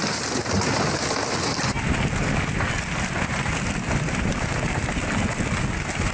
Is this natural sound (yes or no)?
yes